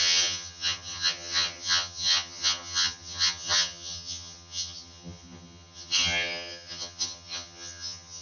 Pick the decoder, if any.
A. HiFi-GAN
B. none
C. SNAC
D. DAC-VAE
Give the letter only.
A